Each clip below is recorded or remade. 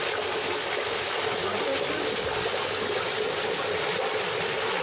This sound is recorded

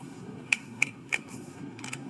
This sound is remade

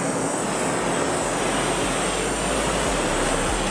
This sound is recorded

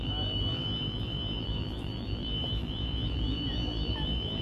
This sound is remade